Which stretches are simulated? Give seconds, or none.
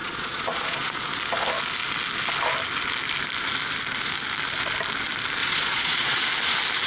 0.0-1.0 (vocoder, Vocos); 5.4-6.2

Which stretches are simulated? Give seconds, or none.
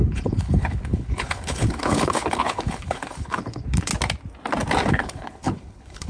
0.0-3.9 (codec, HILCodec); 4.9-6.1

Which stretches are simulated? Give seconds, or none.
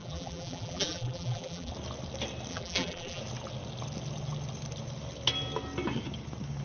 0.0-1.7 (vocoder, BigVGAN v2); 2.5-3.2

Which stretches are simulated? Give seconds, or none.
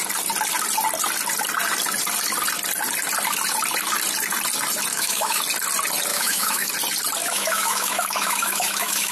4.9-5.4 (autoencoder, DAC-VAE); 6.1-6.7; 7.2-9.1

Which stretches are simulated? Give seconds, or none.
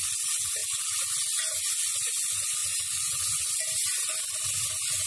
2.6-3.5 (vocoder, Vocos)